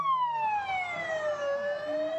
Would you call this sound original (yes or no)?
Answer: yes